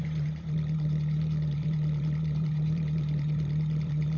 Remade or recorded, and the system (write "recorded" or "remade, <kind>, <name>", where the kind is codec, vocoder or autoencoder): remade, vocoder, BigVGAN v2